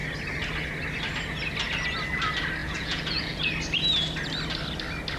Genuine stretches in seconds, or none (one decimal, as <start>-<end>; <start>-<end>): 0.0-2.6; 3.5-5.2